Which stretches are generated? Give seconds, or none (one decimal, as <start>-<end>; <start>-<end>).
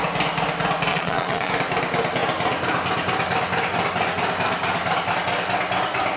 0.9-1.5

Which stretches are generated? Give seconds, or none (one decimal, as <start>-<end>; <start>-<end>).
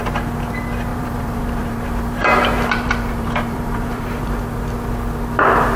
0.9-4.4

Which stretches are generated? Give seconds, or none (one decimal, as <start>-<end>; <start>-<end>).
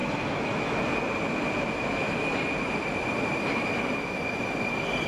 0.0-0.8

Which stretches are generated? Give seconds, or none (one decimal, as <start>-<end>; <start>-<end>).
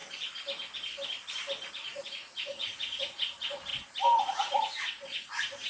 1.7-3.7; 4.2-5.7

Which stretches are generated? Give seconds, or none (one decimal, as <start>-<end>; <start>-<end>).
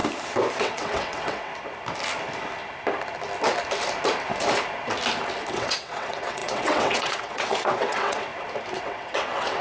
0.6-1.5; 5.5-8.3; 8.8-9.6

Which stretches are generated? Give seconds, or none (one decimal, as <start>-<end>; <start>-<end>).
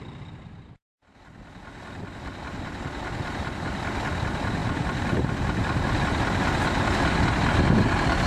none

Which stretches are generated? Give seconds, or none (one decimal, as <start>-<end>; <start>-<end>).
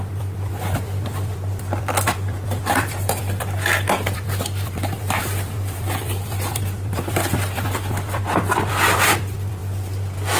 0.0-9.6